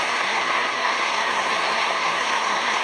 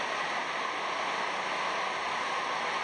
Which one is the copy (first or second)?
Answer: first